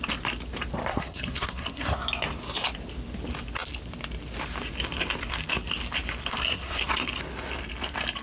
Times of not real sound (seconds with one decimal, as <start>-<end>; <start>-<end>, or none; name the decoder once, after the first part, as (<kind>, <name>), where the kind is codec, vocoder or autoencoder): 0.9-2.0 (codec, SNAC); 6.3-6.9